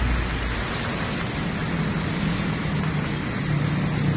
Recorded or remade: recorded